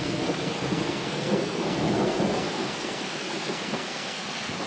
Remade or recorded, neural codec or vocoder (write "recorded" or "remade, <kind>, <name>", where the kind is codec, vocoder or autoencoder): remade, codec, SNAC